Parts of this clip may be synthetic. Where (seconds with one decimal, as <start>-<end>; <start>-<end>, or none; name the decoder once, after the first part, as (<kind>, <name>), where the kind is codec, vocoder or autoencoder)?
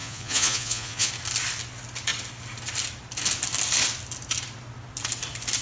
0.0-1.1 (vocoder, Vocos)